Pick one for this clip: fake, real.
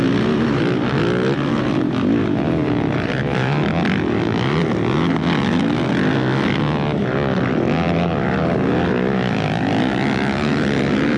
real